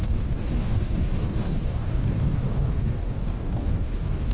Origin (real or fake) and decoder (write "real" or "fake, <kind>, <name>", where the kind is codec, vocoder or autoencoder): fake, codec, DAC